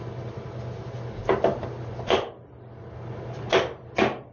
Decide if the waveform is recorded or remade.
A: recorded